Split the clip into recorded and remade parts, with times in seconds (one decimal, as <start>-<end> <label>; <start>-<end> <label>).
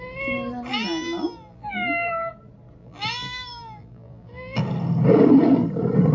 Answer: 0.0-0.7 recorded; 0.7-2.3 remade; 2.3-2.8 recorded; 2.8-4.6 remade; 4.6-6.1 recorded